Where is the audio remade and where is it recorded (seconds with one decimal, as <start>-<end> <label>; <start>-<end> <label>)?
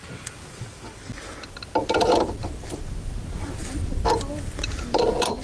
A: 0.0-3.2 recorded; 3.2-3.6 remade; 3.6-4.7 recorded; 4.7-5.4 remade